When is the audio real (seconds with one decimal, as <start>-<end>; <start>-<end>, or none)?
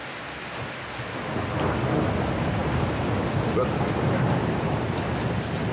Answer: 0.0-2.6; 5.1-5.7